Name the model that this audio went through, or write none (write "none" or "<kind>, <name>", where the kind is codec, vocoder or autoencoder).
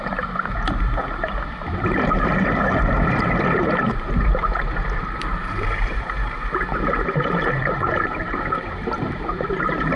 vocoder, BigVGAN v2